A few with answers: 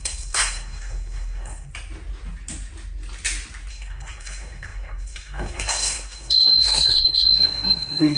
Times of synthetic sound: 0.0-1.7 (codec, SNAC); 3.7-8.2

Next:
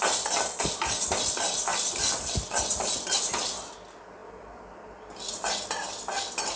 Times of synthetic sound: none

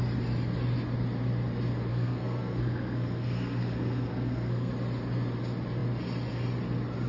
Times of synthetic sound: 1.9-4.7 (codec, SNAC)